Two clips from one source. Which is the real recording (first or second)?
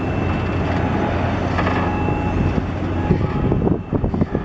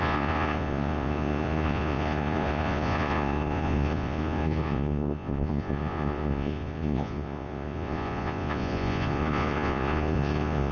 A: first